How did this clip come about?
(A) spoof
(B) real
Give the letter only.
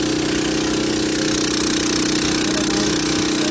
B